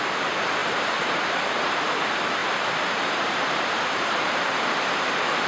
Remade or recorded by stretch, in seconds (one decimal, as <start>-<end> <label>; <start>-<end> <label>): 0.0-0.6 recorded; 0.6-1.9 remade; 1.9-2.4 recorded; 2.4-5.1 remade; 5.1-5.5 recorded